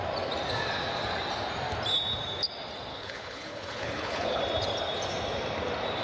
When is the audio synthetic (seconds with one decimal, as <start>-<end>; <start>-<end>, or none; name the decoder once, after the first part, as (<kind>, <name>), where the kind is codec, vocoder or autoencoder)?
2.9-4.4 (codec, HILCodec)